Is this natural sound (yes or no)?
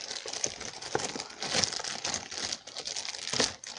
yes